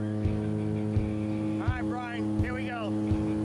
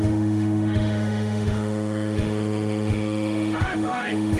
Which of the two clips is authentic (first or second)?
first